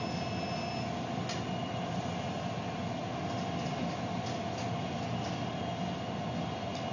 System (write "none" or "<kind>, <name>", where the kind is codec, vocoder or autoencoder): none